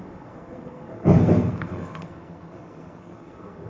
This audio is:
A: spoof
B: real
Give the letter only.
A